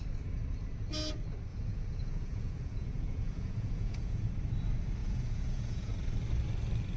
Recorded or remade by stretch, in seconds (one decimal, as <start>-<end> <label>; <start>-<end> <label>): 0.0-1.5 recorded; 1.5-4.3 remade; 4.3-5.0 recorded; 5.0-5.9 remade; 5.9-7.0 recorded